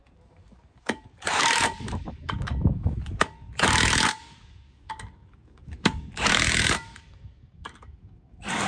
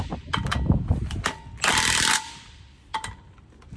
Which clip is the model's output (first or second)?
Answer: first